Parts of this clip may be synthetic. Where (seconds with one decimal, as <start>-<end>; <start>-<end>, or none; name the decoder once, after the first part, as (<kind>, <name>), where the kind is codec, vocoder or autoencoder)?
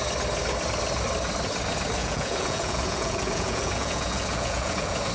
2.0-5.1 (vocoder, Vocos)